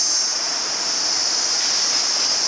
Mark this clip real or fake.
real